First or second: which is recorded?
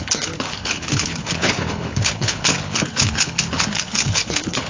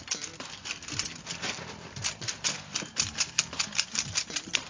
second